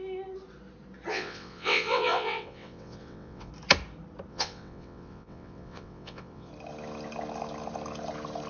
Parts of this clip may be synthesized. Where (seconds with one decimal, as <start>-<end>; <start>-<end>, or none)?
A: 1.1-3.5; 4.3-6.5